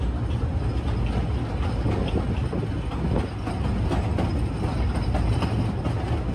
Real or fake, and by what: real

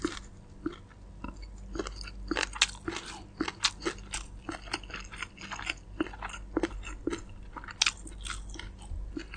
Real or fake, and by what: real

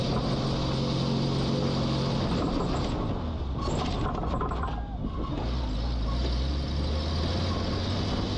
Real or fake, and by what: real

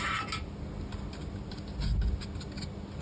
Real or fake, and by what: real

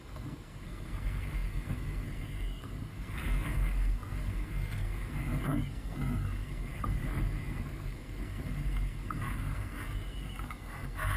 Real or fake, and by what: fake, codec, SNAC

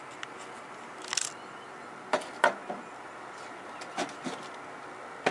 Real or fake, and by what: real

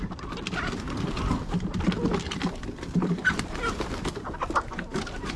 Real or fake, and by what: real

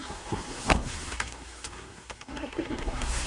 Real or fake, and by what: fake, codec, SNAC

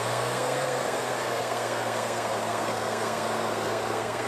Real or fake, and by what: fake, codec, SNAC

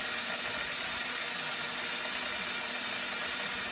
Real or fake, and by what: real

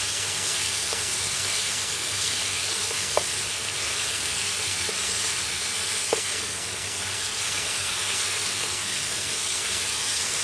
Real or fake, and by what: fake, codec, SNAC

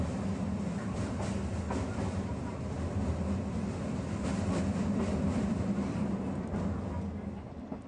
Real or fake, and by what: real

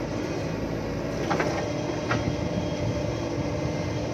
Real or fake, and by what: real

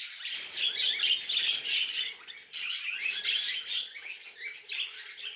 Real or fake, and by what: real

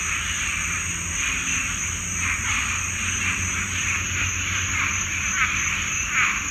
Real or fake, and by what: real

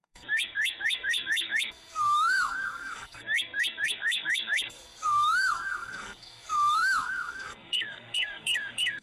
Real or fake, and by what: fake, codec, SNAC